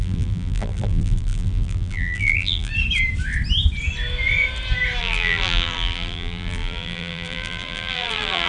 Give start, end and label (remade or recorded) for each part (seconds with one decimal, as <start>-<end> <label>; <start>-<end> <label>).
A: 0.0-2.7 remade; 2.7-5.0 recorded; 5.0-8.5 remade